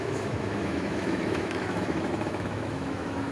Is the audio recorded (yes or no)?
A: no